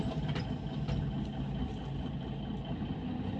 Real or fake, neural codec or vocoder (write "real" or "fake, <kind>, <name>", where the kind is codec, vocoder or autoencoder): real